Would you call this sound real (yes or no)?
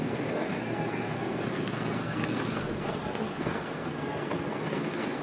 no